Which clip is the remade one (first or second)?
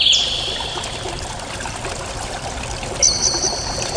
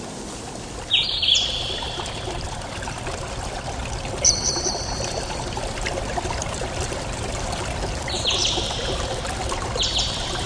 second